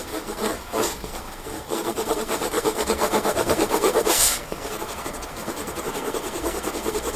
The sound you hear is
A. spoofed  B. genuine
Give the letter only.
A